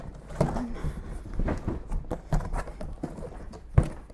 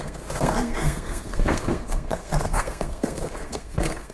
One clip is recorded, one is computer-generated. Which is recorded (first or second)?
first